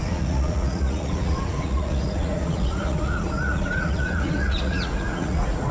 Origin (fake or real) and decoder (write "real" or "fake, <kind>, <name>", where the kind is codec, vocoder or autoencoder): fake, vocoder, Vocos